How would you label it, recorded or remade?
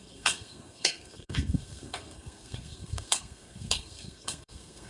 remade